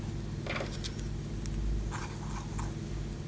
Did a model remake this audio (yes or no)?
no